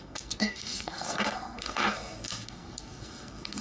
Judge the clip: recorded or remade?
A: remade